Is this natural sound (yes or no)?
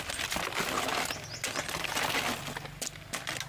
yes